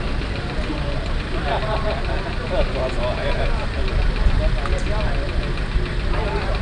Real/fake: real